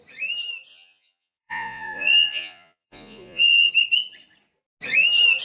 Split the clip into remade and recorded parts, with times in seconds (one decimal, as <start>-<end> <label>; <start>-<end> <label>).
0.0-0.7 recorded; 0.7-3.7 remade; 3.7-5.4 recorded